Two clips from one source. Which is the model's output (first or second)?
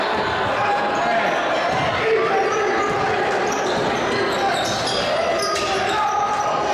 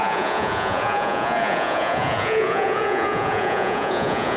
second